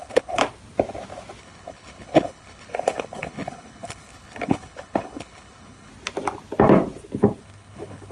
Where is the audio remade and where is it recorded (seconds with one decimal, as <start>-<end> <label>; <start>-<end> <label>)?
0.0-0.4 remade; 0.4-1.4 recorded; 1.4-5.9 remade; 5.9-7.4 recorded; 7.4-8.1 remade